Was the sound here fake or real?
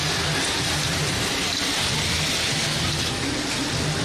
real